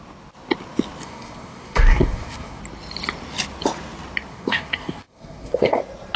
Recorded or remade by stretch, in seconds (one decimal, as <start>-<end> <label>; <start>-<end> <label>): 0.0-1.0 recorded; 1.0-2.6 remade; 2.6-4.3 recorded; 4.3-5.8 remade; 5.8-6.2 recorded